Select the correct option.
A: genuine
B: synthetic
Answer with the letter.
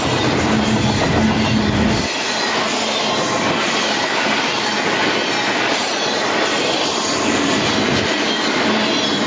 A